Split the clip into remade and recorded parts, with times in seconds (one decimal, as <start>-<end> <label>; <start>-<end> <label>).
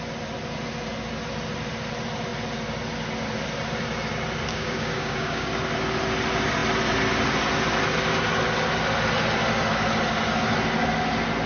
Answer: 0.0-4.5 recorded; 4.5-5.5 remade; 5.5-11.5 recorded